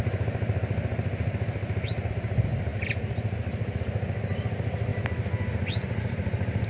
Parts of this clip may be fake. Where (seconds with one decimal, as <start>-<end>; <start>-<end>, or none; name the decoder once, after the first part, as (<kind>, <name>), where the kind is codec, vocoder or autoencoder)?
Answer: none